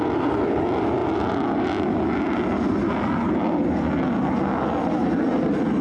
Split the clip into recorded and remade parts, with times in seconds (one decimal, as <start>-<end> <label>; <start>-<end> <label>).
0.0-5.8 recorded